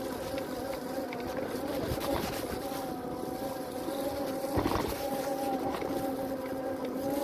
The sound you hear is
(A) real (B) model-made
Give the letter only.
A